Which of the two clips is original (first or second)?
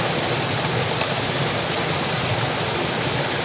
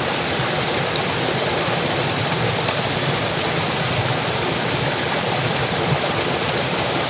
first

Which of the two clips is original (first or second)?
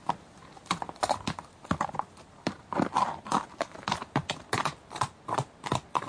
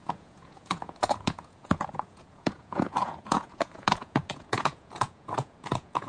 first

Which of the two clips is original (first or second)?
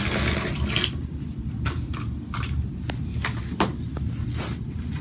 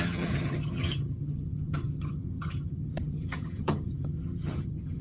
first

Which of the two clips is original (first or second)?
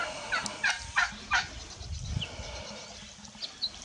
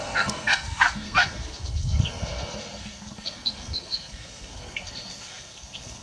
first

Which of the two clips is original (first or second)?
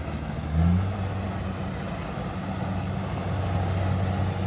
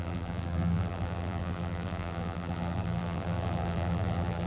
first